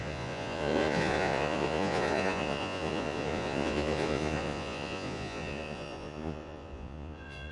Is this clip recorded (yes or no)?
no